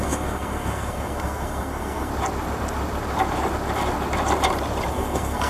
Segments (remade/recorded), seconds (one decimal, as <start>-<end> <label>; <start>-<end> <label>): 0.0-2.1 remade; 2.1-4.9 recorded; 4.9-5.5 remade